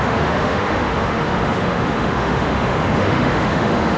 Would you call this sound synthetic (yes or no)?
yes